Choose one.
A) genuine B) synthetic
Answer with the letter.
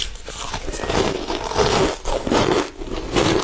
A